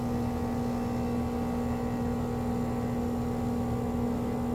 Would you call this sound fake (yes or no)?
no